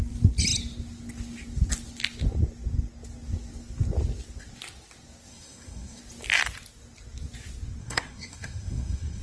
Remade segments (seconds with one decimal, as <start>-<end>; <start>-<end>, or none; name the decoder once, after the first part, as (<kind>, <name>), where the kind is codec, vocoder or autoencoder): 5.3-6.0 (codec, SNAC); 7.8-9.2